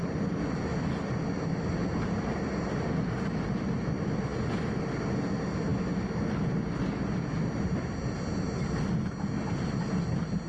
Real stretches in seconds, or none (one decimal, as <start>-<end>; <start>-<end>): 0.0-10.5